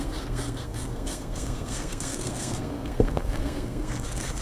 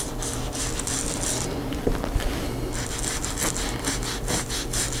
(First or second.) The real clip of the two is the second